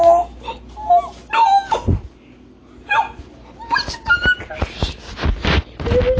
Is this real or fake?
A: real